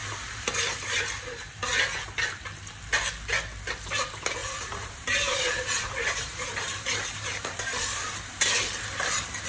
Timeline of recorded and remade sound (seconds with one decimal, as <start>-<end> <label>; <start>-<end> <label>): 0.0-1.0 remade; 1.0-4.4 recorded; 4.4-8.4 remade; 8.4-9.5 recorded